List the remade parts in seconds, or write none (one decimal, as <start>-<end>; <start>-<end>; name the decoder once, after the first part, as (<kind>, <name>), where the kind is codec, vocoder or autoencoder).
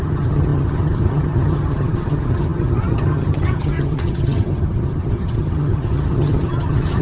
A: 0.0-7.0 (vocoder, HiFi-GAN)